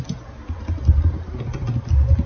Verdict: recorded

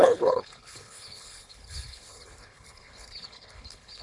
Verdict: remade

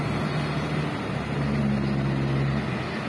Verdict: recorded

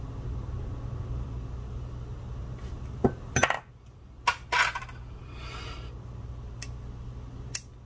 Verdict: recorded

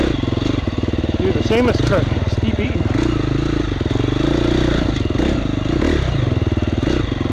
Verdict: recorded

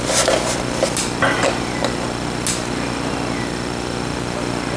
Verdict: recorded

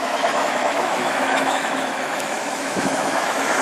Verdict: remade